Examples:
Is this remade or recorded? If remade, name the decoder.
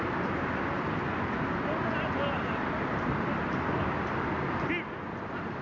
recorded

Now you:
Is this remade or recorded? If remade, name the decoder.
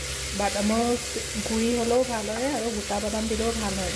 recorded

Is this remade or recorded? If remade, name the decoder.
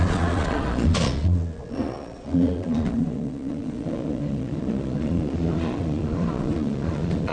remade, vocoder, Vocos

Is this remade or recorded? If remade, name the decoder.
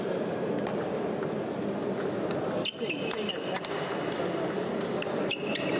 recorded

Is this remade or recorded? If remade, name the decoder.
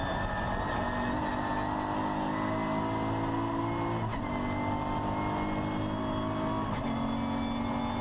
recorded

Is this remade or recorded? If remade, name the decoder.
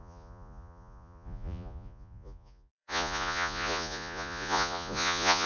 remade, vocoder, Vocos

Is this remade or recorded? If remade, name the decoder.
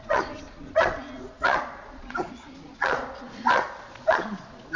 remade, vocoder, Vocos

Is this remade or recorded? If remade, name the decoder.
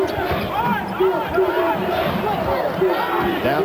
recorded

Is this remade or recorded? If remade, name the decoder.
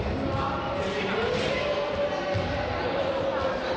recorded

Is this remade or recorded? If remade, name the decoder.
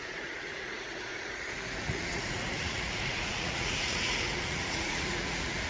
remade, vocoder, Vocos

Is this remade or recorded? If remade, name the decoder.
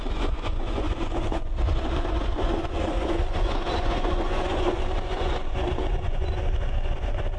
remade, vocoder, Vocos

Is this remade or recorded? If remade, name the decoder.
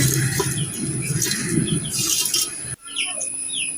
recorded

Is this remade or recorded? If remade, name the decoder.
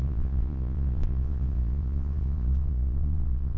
remade, vocoder, Vocos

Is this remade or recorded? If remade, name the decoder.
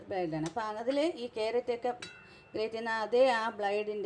recorded